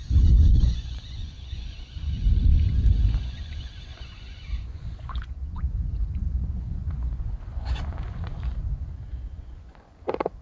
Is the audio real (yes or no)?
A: no